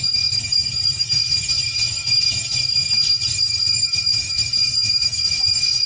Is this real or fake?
fake